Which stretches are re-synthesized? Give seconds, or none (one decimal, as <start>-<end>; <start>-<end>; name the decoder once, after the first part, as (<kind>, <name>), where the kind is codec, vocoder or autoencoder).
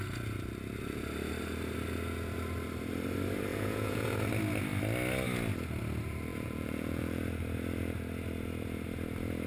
3.5-4.1 (vocoder, Vocos); 6.3-7.2